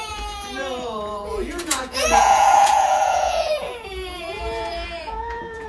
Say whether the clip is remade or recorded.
remade